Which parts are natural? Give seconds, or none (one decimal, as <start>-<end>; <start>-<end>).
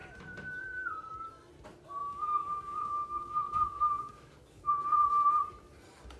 0.0-2.0; 4.7-6.2